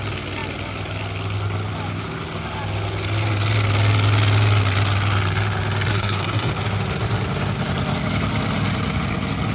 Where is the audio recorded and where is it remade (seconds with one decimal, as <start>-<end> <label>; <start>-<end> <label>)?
0.0-5.9 recorded; 5.9-6.5 remade; 6.5-9.5 recorded